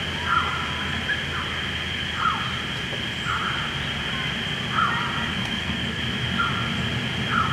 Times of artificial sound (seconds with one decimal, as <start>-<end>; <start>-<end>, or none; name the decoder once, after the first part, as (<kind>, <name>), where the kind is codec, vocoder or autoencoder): 5.3-6.0 (codec, SNAC)